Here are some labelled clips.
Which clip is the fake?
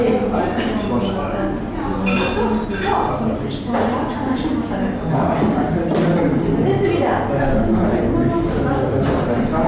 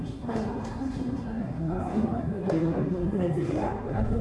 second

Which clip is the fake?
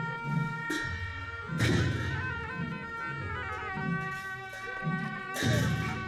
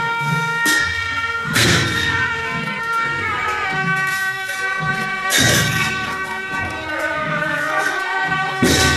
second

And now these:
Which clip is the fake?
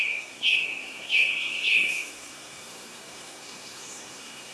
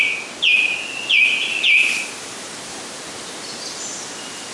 first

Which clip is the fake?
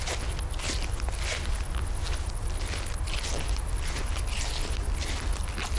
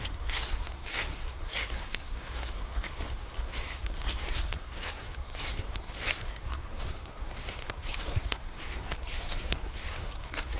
second